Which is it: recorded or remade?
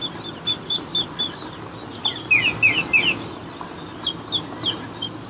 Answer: recorded